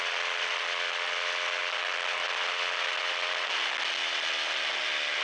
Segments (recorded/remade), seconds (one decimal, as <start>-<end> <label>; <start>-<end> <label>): 0.0-5.2 recorded